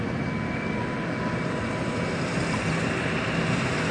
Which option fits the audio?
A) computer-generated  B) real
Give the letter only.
B